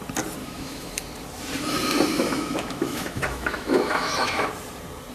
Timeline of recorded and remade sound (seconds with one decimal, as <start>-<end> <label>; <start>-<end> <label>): 0.0-0.4 recorded; 0.4-0.9 remade; 0.9-2.1 recorded; 2.1-4.5 remade; 4.5-5.1 recorded